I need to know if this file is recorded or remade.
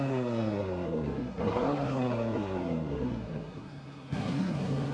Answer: remade